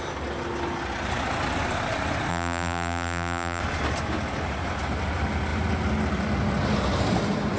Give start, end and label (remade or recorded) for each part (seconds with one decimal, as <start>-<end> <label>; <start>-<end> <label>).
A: 0.0-2.3 recorded; 2.3-3.6 remade; 3.6-7.6 recorded